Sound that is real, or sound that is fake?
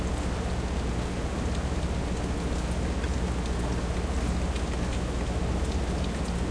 real